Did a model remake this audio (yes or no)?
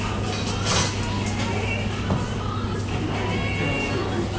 no